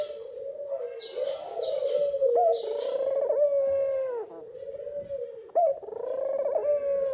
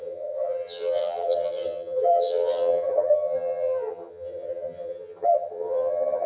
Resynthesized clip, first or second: second